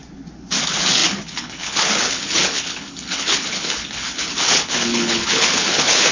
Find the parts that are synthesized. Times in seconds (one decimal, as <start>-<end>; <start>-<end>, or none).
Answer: 0.6-6.1